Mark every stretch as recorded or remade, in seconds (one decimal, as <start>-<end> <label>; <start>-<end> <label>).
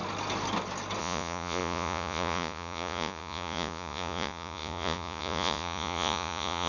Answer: 0.0-1.0 recorded; 1.0-6.7 remade